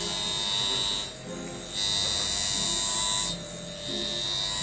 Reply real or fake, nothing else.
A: real